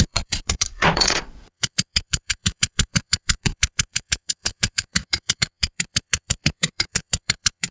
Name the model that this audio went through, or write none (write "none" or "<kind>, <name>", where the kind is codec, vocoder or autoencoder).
vocoder, Vocos